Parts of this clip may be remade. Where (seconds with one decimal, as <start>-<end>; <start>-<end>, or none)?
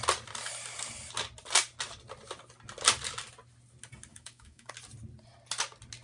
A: 4.1-4.7